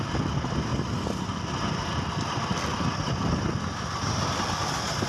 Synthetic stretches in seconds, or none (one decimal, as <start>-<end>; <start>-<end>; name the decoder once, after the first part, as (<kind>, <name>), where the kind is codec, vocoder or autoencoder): none